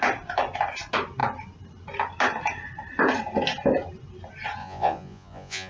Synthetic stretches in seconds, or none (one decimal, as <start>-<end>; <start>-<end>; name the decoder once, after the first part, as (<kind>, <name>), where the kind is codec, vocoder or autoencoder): 4.6-5.7 (vocoder, Vocos)